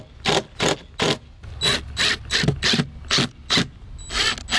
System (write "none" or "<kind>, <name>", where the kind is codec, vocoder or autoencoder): none